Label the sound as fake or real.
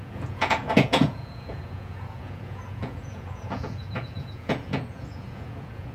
fake